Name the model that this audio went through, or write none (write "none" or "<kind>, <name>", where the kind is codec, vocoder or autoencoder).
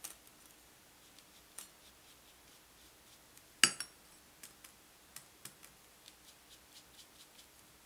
none